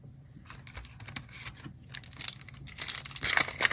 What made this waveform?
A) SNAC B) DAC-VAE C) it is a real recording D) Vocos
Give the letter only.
C